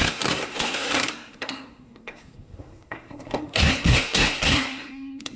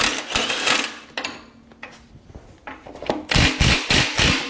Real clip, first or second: second